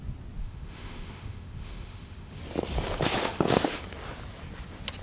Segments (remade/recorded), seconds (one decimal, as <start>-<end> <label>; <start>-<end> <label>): 0.0-0.4 recorded; 0.4-2.4 remade; 2.4-3.2 recorded; 3.2-3.8 remade; 3.8-5.0 recorded